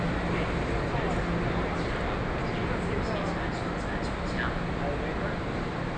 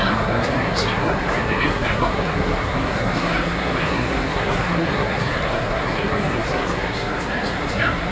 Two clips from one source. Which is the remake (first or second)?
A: second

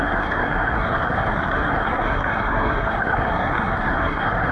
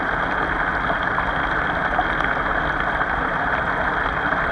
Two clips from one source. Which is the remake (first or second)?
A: first